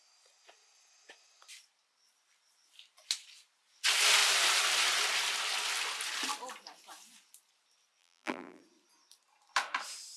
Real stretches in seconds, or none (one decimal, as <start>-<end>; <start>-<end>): 0.0-8.0; 8.6-10.2